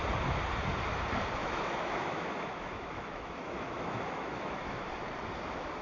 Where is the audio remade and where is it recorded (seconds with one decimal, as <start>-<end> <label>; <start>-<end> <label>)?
0.0-1.4 recorded; 1.4-4.9 remade; 4.9-5.8 recorded